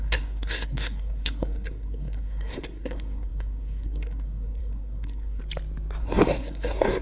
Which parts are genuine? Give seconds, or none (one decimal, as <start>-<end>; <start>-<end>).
5.4-6.0